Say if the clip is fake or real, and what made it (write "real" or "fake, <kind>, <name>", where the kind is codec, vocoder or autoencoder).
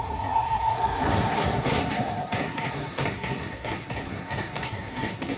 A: fake, codec, SNAC